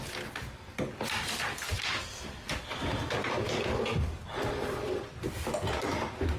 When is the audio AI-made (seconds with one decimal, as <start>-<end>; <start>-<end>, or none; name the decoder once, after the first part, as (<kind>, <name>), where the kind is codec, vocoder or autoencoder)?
1.7-5.3 (vocoder, BigVGAN v2)